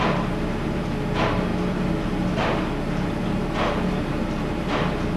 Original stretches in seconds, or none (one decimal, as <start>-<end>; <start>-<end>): 0.0-5.2